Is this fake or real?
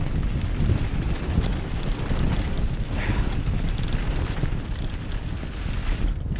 real